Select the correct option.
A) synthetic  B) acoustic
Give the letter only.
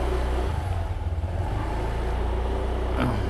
B